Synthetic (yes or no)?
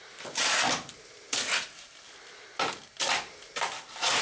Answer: no